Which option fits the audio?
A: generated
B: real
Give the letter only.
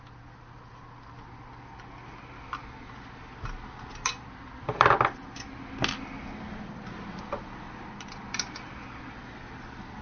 B